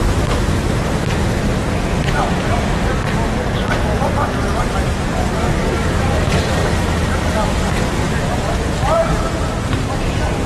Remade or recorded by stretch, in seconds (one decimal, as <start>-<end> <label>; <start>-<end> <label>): 0.0-6.6 recorded; 6.6-10.0 remade; 10.0-10.5 recorded